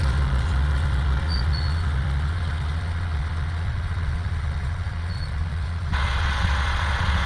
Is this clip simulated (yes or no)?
yes